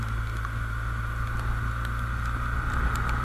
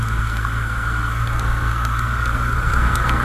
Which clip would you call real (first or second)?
first